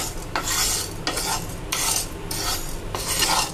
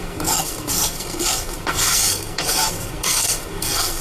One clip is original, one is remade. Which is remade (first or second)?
second